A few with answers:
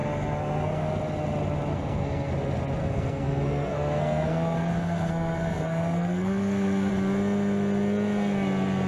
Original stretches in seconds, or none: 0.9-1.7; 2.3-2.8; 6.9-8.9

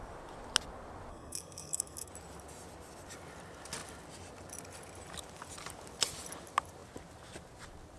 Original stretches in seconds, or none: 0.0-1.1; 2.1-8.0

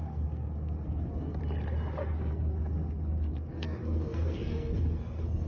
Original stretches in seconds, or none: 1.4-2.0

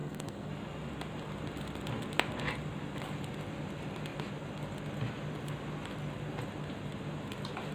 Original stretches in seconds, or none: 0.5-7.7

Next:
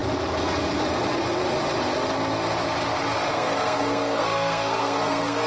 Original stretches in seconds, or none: 0.0-3.3